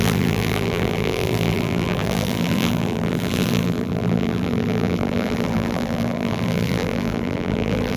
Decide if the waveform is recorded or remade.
remade